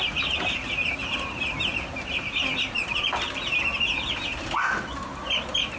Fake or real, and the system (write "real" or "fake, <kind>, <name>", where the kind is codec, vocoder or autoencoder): real